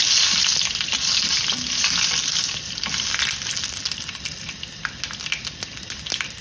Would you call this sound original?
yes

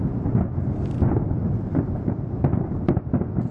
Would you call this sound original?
yes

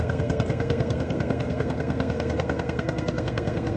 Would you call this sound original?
no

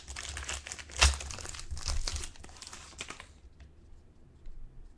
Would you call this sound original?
yes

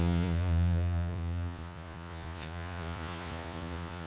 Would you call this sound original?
no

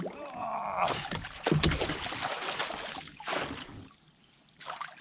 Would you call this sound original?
yes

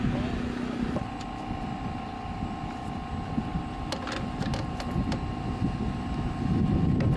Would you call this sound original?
yes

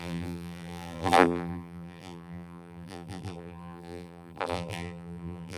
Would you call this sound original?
no